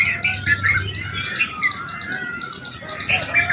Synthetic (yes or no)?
no